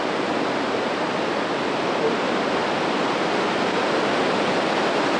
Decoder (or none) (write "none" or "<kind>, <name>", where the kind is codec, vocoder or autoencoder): none